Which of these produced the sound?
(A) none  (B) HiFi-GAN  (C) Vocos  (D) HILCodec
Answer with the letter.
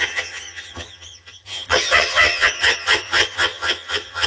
B